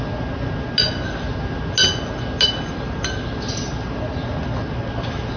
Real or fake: real